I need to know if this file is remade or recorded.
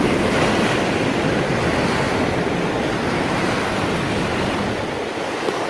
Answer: recorded